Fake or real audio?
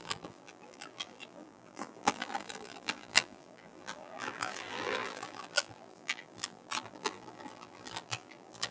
fake